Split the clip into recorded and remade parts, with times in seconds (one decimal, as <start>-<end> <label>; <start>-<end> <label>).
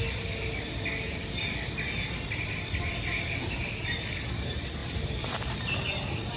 0.0-6.4 recorded